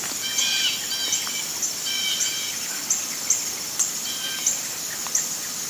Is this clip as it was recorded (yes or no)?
yes